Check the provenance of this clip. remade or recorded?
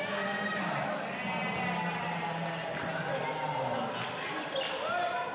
recorded